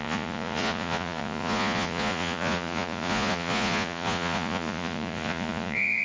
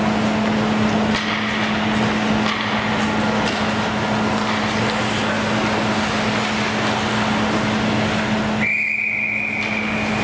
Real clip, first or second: second